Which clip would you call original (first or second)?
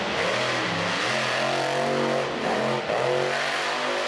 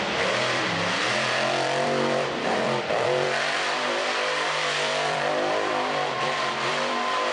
first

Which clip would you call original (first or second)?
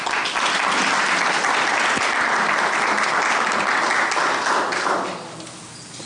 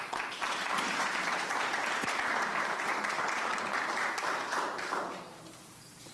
first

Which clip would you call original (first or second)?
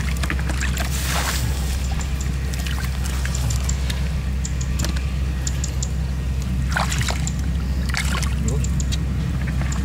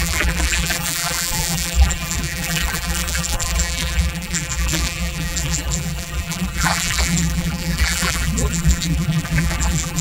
first